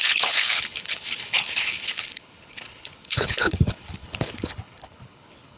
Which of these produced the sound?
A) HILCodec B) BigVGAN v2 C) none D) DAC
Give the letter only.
A